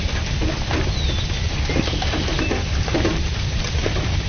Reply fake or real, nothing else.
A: real